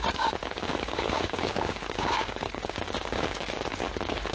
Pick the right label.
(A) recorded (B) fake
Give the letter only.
B